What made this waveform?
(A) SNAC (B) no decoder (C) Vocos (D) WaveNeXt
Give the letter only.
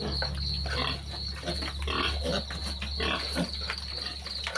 B